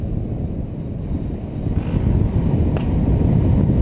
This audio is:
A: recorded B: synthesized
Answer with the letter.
A